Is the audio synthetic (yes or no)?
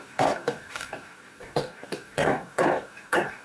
yes